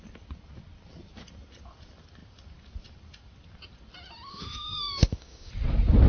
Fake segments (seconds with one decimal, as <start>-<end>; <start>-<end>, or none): 4.3-5.5